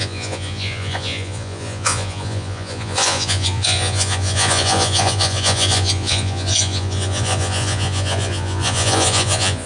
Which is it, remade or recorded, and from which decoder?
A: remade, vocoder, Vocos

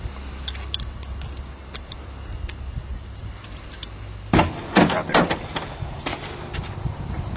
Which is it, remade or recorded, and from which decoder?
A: recorded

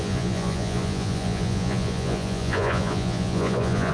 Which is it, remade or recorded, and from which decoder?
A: remade, vocoder, Vocos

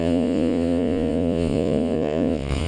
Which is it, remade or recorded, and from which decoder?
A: remade, vocoder, Vocos